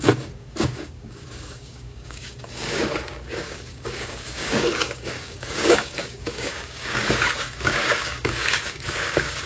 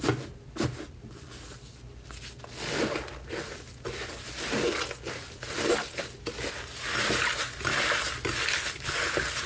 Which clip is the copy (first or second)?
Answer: first